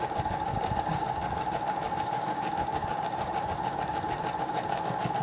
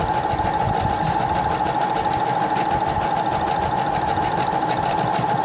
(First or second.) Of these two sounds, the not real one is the first